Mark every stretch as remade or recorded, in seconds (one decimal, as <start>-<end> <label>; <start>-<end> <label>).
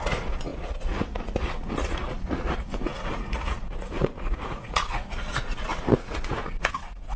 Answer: 0.0-7.2 remade